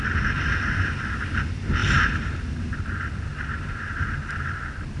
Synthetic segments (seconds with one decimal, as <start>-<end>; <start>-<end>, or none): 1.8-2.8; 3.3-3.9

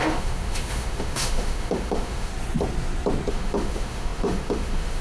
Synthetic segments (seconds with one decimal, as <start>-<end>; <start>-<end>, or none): 0.0-2.3; 3.3-5.0

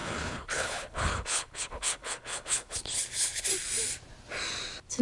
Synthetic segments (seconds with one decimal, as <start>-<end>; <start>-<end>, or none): 0.0-3.5